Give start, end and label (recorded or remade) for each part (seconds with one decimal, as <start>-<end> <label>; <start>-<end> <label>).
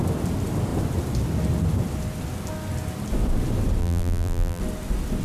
0.0-3.8 recorded; 3.8-4.6 remade; 4.6-5.2 recorded